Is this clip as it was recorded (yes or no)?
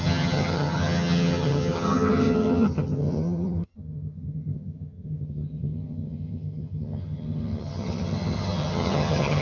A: no